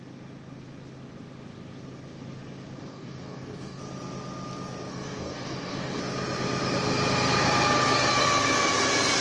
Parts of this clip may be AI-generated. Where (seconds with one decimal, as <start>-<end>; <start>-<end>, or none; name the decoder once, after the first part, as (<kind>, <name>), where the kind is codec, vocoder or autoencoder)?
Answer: 2.9-3.8 (codec, DAC); 4.9-6.0

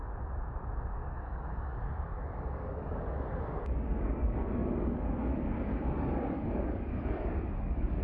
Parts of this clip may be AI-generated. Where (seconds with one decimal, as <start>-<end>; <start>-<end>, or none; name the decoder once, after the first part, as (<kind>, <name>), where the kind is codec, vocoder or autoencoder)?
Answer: 0.9-8.0 (codec, DAC)

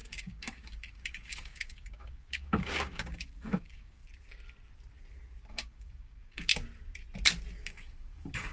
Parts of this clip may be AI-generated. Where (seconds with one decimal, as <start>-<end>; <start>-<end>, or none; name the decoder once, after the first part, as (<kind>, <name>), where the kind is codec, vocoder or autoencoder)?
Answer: 0.0-4.0 (codec, DAC); 5.5-6.5; 7.5-8.5